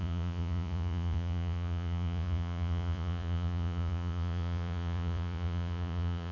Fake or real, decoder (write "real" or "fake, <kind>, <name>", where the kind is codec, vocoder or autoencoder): fake, vocoder, Vocos